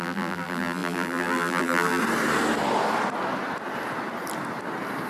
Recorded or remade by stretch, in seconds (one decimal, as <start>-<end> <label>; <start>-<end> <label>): 0.0-2.0 remade; 2.0-5.1 recorded